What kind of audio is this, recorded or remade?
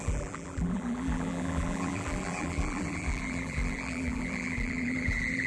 remade